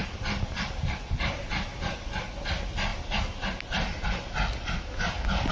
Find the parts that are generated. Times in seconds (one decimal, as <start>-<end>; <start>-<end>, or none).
none